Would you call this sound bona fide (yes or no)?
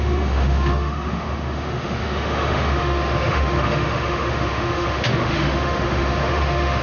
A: no